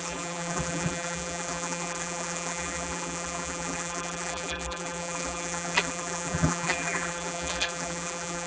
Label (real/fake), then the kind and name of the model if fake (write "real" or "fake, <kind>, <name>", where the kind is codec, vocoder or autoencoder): fake, vocoder, BigVGAN v2